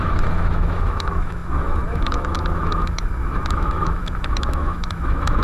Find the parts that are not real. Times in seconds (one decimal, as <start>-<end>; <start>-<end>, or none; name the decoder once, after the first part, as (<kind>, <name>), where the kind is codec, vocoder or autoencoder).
0.0-5.4 (autoencoder, DAC-VAE)